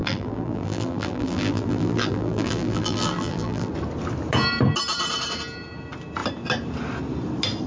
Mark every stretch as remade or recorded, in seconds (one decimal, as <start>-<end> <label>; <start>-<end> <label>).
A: 0.0-3.7 remade; 3.7-7.7 recorded